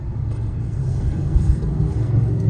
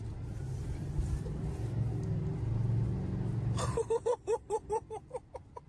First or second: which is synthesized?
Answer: first